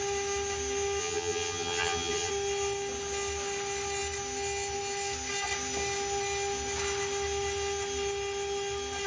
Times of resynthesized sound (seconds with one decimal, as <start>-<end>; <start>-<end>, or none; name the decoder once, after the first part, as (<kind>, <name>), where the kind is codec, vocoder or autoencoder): 1.0-2.3 (vocoder, HiFi-GAN)

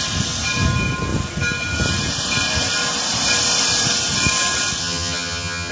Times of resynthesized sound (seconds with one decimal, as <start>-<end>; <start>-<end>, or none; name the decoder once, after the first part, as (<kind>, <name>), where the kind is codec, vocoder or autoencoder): 4.8-5.7 (vocoder, HiFi-GAN)